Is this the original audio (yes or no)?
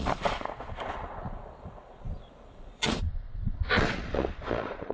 no